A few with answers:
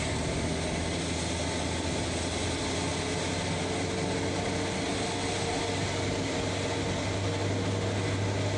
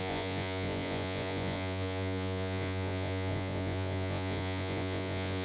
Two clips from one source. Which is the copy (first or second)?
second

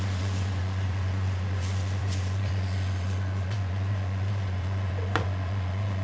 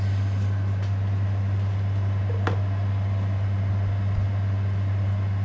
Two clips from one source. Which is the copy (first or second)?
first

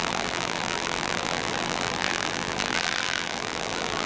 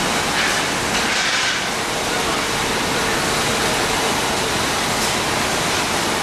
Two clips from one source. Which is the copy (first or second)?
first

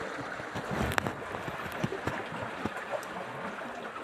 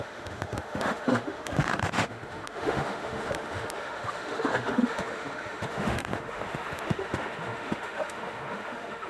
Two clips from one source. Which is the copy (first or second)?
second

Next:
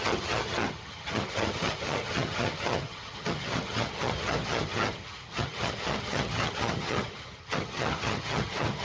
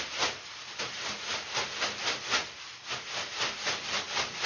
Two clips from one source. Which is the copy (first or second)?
first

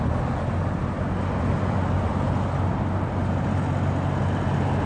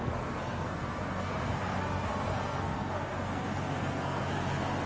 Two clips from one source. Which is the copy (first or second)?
second